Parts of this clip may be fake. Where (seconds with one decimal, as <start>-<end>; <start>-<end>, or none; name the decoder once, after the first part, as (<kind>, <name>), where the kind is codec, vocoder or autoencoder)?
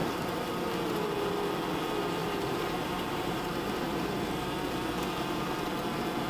2.2-4.6 (vocoder, BigVGAN v2)